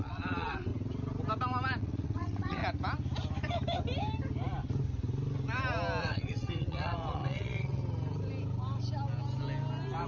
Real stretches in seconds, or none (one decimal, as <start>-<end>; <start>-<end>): 0.7-1.8; 2.6-6.0; 7.8-10.1